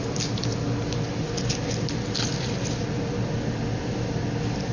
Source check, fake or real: real